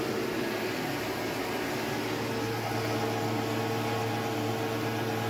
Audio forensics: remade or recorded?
recorded